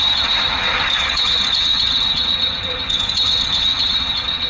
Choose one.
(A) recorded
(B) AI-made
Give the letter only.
B